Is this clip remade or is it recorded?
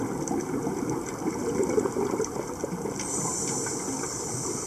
recorded